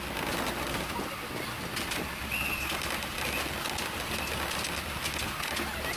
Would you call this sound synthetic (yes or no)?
no